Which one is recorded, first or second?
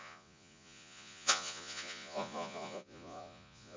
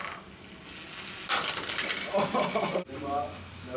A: second